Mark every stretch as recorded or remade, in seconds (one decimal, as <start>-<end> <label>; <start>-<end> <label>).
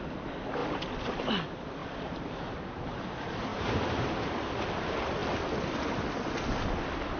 0.0-1.8 recorded; 1.8-2.3 remade; 2.3-3.5 recorded; 3.5-4.0 remade; 4.0-7.2 recorded